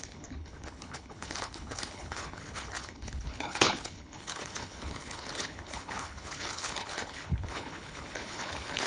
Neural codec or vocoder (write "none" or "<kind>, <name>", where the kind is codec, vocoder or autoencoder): codec, HILCodec